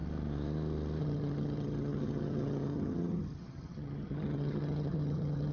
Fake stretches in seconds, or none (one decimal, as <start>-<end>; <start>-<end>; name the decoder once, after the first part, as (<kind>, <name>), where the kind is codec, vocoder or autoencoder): 1.0-5.5 (vocoder, HiFi-GAN)